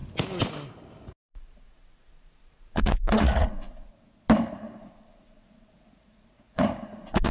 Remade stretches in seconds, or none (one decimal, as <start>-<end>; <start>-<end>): 1.1-3.9; 4.8-7.3